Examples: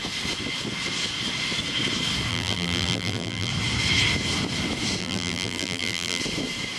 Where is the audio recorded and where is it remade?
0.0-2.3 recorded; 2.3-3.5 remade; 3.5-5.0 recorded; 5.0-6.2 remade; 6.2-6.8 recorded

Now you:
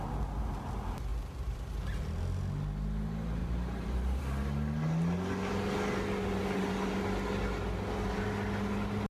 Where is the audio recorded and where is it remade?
0.0-1.1 recorded; 1.1-1.7 remade; 1.7-3.4 recorded; 3.4-4.2 remade; 4.2-9.1 recorded

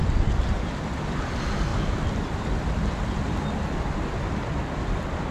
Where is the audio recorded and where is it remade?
0.0-1.7 recorded; 1.7-5.3 remade

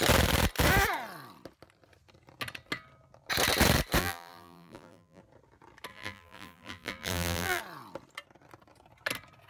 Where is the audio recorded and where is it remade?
0.0-4.0 recorded; 4.0-5.2 remade; 5.2-5.9 recorded; 5.9-7.6 remade; 7.6-9.5 recorded

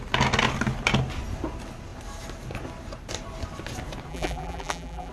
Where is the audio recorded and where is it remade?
0.0-4.1 recorded; 4.1-5.1 remade

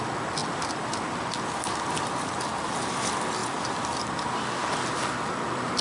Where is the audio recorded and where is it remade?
0.0-5.8 recorded